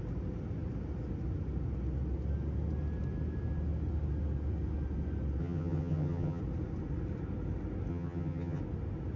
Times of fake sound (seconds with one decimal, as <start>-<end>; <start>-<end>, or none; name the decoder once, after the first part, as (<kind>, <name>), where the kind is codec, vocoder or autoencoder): 5.4-6.4 (vocoder, HiFi-GAN); 7.9-8.6

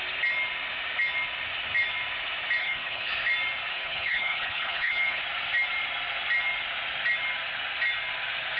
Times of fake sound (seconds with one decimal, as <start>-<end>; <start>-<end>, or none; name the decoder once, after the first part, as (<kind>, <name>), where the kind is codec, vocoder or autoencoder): 2.6-3.1 (codec, HILCodec); 3.7-5.2

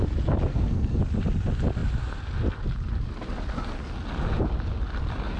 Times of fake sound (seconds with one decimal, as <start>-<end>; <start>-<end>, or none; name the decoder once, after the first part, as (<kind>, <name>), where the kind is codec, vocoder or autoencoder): 0.5-1.0 (codec, SNAC)

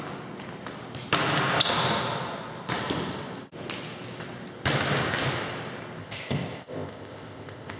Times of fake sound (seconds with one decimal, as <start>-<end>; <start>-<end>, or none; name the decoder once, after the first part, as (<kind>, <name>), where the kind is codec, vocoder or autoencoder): 6.0-7.8 (codec, ZipCodec)

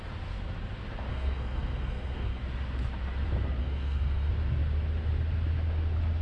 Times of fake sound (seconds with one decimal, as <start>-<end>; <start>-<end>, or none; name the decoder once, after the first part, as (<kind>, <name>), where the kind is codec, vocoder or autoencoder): 1.1-2.4 (codec, SNAC); 3.6-4.3